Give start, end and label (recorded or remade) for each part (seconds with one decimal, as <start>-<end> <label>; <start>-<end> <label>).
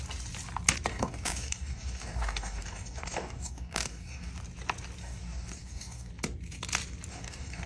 0.0-0.9 recorded; 0.9-4.3 remade; 4.3-5.0 recorded; 5.0-6.1 remade; 6.1-7.1 recorded; 7.1-7.7 remade